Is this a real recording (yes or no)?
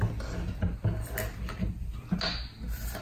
yes